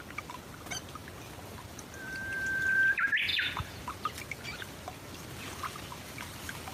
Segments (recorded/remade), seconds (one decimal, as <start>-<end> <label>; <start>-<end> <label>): 0.0-3.3 recorded; 3.3-3.8 remade; 3.8-6.7 recorded

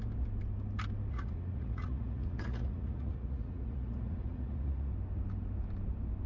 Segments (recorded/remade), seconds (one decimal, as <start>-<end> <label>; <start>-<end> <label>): 0.0-1.1 recorded; 1.1-4.9 remade; 4.9-6.3 recorded